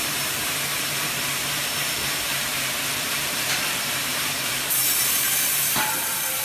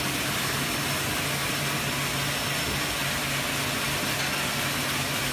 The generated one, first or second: first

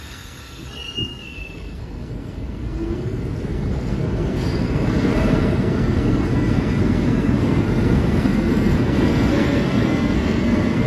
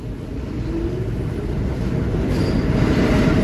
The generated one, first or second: first